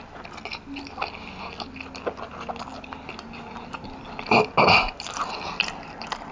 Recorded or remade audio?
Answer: recorded